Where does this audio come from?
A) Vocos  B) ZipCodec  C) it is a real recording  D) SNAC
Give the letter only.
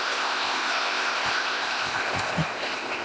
B